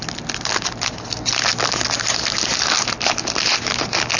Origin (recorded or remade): recorded